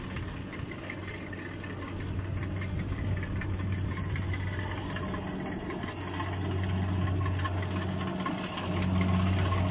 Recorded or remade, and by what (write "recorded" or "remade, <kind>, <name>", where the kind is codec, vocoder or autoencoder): recorded